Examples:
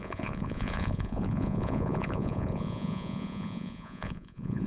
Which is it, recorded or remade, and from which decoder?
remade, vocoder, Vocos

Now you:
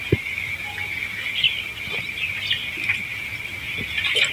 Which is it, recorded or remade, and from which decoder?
recorded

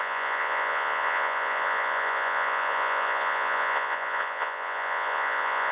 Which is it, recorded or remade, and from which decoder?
remade, vocoder, Vocos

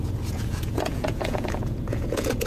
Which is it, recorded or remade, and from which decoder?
remade, vocoder, Vocos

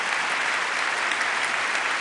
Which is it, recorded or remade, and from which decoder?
recorded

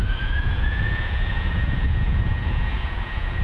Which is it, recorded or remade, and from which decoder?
remade, vocoder, Vocos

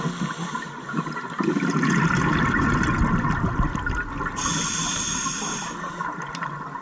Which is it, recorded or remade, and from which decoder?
recorded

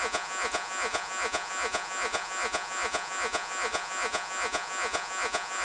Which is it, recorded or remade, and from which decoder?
remade, vocoder, Vocos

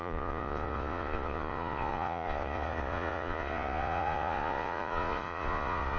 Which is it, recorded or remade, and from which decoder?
remade, vocoder, Vocos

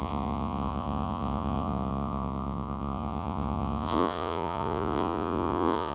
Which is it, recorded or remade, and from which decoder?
remade, vocoder, Vocos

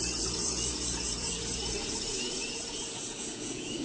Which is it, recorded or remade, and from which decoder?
remade, vocoder, Vocos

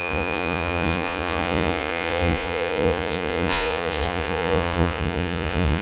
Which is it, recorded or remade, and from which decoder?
remade, vocoder, Vocos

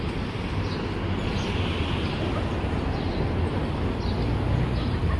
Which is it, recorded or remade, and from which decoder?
recorded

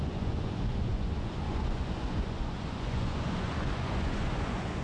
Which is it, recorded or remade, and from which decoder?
remade, vocoder, Vocos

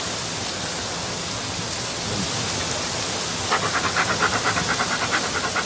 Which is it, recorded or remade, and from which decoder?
recorded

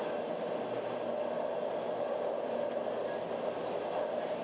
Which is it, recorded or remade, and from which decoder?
recorded